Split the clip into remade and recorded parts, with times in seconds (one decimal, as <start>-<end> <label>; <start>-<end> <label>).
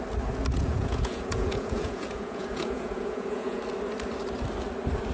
0.0-0.5 recorded; 0.5-3.6 remade; 3.6-5.1 recorded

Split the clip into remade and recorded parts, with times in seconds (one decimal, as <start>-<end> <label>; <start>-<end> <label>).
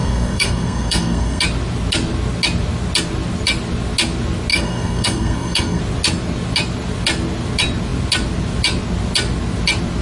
0.0-1.4 remade; 1.4-4.5 recorded; 4.5-5.8 remade; 5.8-10.0 recorded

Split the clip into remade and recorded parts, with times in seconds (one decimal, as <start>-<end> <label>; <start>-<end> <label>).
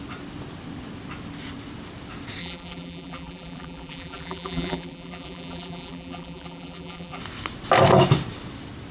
0.0-2.4 recorded; 2.4-7.2 remade; 7.2-8.9 recorded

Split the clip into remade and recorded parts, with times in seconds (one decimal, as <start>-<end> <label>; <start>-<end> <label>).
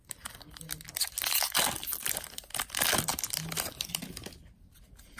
0.0-5.2 recorded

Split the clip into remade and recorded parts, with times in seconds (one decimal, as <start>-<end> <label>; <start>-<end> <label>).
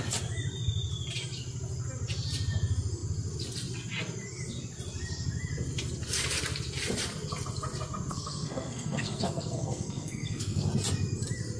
0.0-8.1 recorded; 8.1-10.7 remade; 10.7-11.6 recorded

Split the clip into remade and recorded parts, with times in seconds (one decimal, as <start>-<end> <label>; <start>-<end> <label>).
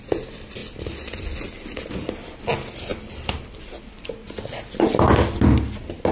0.0-2.9 recorded; 2.9-3.7 remade; 3.7-6.1 recorded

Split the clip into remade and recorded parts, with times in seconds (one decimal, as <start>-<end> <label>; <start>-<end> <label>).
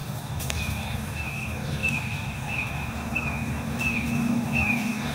0.0-5.1 remade